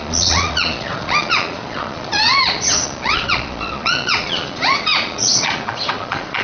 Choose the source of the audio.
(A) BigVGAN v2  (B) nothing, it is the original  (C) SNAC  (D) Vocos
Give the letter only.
D